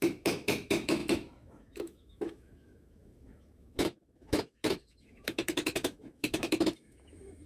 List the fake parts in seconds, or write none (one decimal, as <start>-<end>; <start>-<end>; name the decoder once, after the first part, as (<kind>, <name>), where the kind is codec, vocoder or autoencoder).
0.0-7.5 (autoencoder, DAC-VAE)